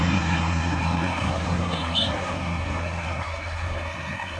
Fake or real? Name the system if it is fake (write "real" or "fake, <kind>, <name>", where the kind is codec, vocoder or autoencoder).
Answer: fake, codec, SNAC